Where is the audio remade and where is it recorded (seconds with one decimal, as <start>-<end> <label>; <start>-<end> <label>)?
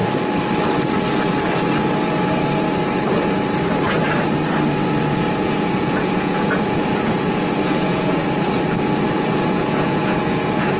0.0-5.3 recorded; 5.3-8.2 remade; 8.2-9.0 recorded; 9.0-10.8 remade